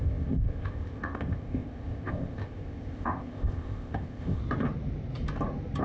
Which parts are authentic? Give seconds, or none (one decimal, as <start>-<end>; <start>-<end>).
4.4-5.8